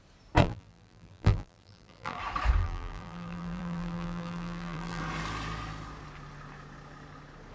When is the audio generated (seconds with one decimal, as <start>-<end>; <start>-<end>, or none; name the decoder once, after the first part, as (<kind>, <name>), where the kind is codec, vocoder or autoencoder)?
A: 0.4-2.2 (vocoder, BigVGAN v2); 2.6-5.0